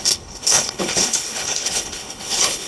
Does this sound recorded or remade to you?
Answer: remade